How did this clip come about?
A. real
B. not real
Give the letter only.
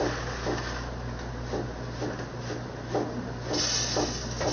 A